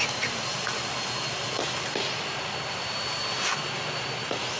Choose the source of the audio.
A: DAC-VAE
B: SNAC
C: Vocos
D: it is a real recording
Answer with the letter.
D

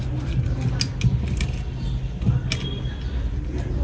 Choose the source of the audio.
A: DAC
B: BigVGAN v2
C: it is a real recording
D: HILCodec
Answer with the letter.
C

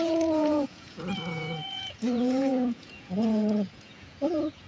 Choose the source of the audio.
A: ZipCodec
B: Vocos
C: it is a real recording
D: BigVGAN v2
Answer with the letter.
B